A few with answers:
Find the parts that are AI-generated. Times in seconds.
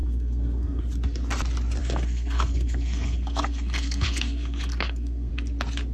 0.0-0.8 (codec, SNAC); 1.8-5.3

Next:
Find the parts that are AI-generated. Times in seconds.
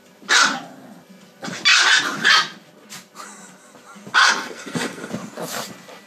4.2-5.1 (codec, SNAC)